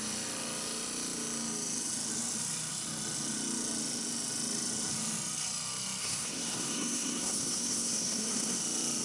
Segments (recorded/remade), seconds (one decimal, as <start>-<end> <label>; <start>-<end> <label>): 0.0-6.0 recorded; 6.0-8.6 remade; 8.6-9.0 recorded